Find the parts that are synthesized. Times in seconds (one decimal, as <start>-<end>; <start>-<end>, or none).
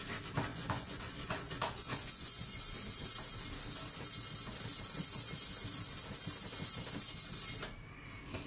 0.5-2.6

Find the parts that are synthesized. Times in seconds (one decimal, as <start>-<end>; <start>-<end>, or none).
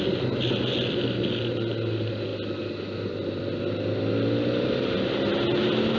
none